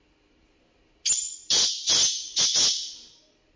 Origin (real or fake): real